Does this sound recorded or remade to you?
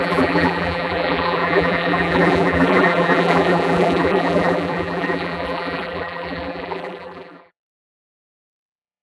remade